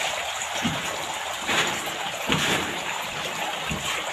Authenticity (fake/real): fake